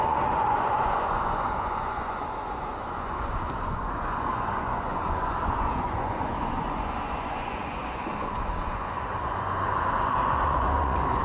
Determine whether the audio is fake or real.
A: fake